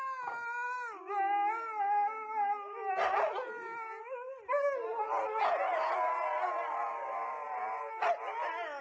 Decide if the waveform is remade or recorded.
recorded